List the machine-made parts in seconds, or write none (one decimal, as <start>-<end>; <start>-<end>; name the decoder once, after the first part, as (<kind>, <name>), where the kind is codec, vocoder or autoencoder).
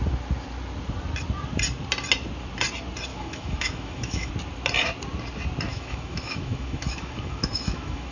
3.1-4.3 (autoencoder, DAC-VAE); 5.7-8.1